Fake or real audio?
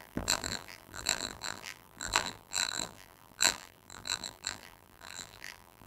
fake